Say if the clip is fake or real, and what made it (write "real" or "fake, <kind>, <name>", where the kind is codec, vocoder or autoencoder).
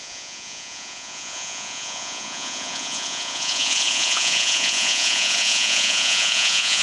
fake, vocoder, Vocos